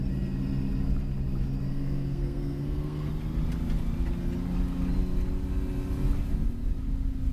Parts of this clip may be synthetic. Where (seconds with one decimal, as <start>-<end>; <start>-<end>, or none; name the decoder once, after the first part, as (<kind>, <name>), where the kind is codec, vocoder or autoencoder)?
1.7-3.1 (codec, SNAC)